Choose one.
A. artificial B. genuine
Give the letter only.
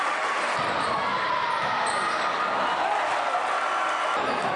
B